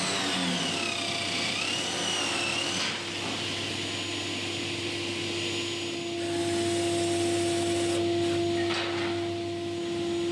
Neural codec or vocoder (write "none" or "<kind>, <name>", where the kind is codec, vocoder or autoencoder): none